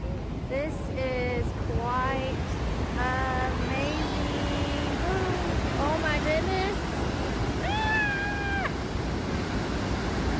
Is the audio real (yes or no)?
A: yes